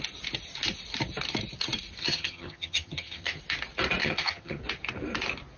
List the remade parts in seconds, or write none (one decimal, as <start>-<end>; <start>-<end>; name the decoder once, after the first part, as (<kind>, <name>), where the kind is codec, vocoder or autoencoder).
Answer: 2.0-3.4 (vocoder, HiFi-GAN); 4.0-4.6